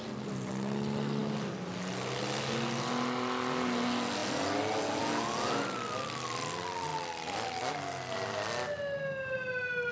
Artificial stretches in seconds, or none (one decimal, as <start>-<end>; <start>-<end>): none